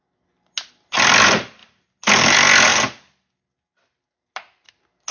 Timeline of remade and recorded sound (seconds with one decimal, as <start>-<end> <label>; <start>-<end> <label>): 0.0-5.1 recorded